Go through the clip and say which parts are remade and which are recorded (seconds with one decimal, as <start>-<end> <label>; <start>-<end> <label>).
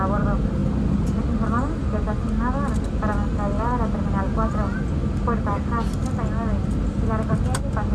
0.0-7.9 recorded